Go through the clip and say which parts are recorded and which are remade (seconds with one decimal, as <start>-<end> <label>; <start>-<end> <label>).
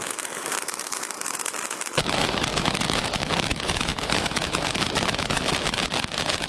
0.0-6.5 remade